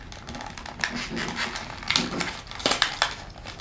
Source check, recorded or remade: recorded